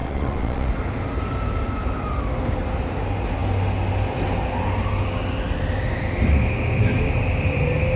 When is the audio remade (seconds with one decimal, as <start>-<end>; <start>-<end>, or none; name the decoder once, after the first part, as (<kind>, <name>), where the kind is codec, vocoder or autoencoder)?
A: 0.0-0.7 (vocoder, Vocos)